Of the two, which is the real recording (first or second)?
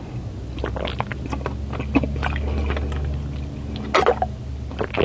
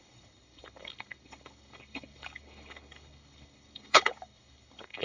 first